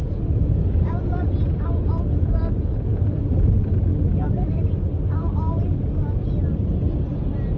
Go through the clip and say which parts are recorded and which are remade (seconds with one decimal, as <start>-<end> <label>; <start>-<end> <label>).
0.0-1.2 remade; 1.2-2.9 recorded; 2.9-3.5 remade; 3.5-7.6 recorded